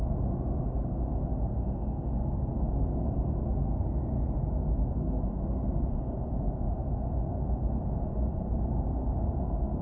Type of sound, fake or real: real